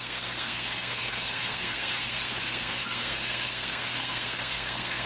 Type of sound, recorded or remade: remade